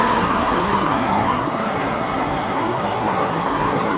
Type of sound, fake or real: fake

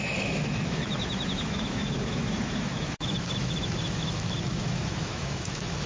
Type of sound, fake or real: fake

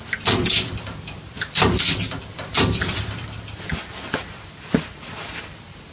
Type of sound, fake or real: fake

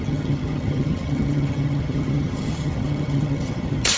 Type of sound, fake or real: fake